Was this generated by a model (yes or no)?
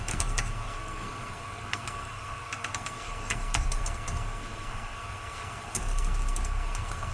yes